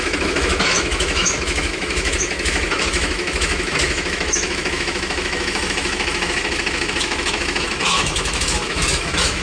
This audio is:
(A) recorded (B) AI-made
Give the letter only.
B